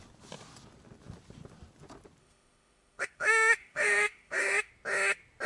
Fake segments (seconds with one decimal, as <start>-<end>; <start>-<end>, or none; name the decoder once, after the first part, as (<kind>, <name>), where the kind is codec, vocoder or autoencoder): 2.2-4.7 (autoencoder, DAC-VAE)